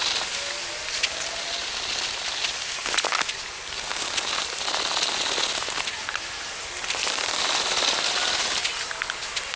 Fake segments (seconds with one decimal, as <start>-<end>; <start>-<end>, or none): none